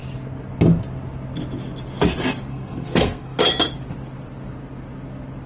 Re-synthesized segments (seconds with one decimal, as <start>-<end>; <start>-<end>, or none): 2.5-3.4